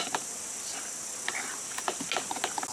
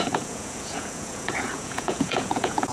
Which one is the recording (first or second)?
first